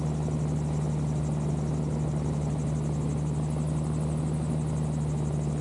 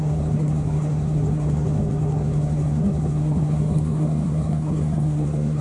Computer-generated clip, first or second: second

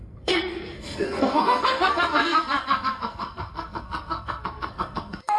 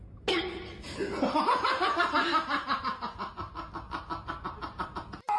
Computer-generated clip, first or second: first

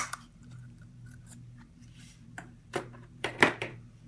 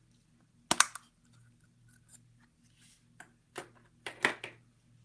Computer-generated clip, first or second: first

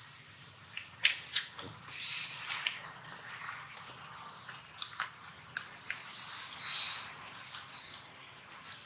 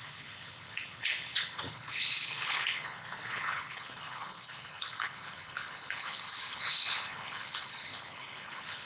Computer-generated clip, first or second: second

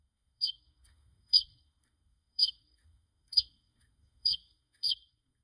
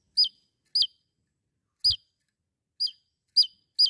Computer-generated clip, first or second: first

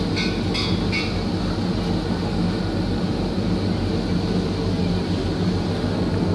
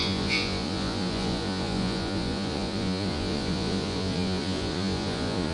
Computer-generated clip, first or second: second